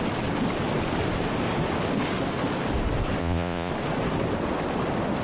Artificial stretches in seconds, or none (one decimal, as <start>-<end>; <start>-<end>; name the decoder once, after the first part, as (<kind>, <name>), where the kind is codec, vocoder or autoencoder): 3.2-3.7 (vocoder, Vocos)